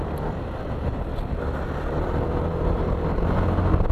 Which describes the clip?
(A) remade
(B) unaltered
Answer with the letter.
B